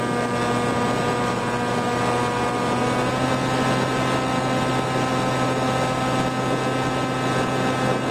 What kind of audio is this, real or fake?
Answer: real